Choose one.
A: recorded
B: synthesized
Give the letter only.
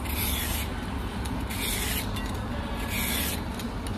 A